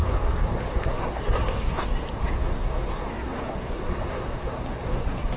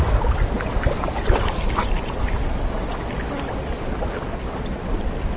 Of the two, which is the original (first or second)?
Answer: second